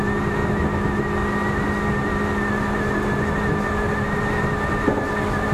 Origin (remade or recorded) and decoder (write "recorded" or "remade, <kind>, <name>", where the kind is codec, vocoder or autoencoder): recorded